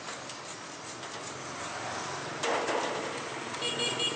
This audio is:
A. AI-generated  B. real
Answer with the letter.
B